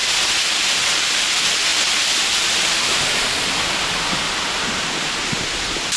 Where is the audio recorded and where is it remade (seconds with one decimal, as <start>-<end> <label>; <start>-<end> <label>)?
0.0-6.0 recorded